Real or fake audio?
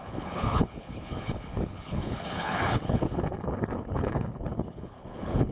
fake